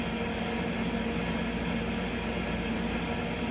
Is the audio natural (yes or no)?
yes